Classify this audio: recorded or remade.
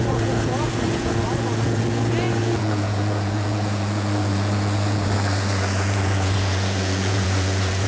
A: remade